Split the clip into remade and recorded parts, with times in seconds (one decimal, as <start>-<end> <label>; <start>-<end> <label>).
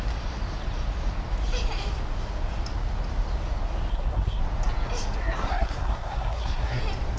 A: 0.0-3.9 recorded; 3.9-4.4 remade; 4.4-5.2 recorded; 5.2-6.8 remade; 6.8-7.2 recorded